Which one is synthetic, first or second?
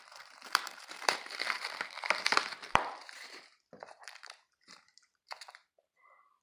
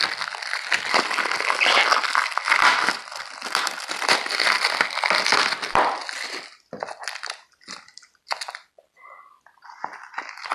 first